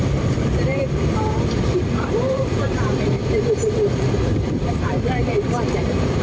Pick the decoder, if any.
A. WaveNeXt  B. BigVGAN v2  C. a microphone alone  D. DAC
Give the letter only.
B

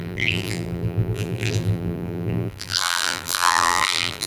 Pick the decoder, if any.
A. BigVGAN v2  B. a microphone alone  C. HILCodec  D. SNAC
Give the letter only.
A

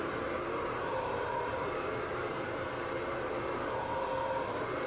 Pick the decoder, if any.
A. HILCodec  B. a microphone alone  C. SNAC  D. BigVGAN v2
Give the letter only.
D